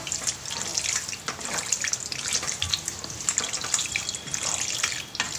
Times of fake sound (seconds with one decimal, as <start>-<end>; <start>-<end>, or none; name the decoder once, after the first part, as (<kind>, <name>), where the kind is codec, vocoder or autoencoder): none